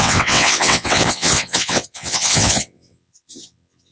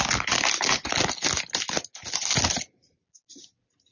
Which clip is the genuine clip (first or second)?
second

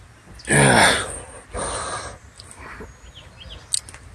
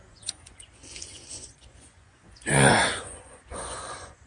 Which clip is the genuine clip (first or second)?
first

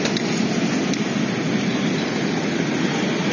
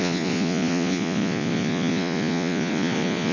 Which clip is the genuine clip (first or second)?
first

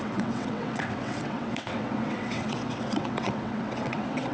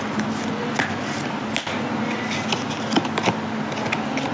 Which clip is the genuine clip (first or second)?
second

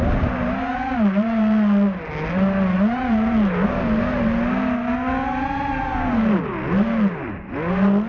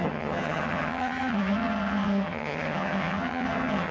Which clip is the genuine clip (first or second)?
first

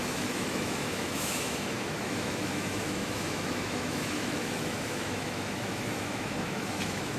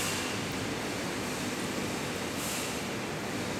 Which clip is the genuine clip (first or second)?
second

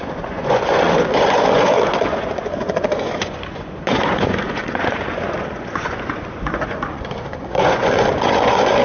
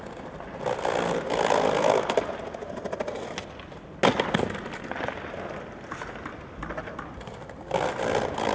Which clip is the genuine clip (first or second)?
second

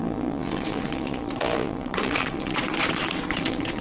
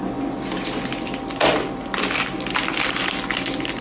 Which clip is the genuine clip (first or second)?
second